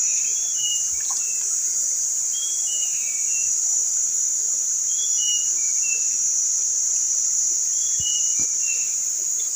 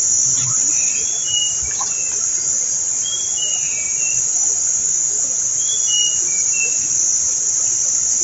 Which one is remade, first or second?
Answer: first